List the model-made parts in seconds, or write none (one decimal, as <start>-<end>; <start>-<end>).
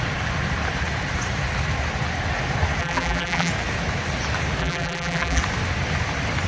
2.8-3.5; 4.6-5.4